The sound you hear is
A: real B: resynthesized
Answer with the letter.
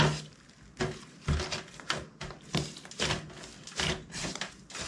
A